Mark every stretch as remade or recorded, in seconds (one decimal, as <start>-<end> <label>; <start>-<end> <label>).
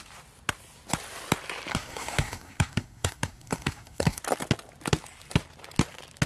0.0-1.7 recorded; 1.7-4.2 remade; 4.2-6.3 recorded